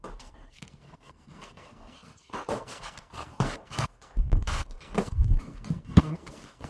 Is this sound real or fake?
fake